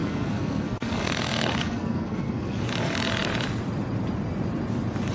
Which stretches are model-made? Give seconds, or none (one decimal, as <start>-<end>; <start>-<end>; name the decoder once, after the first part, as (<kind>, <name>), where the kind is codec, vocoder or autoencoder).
0.0-2.6 (codec, SNAC)